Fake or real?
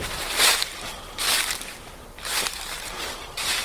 fake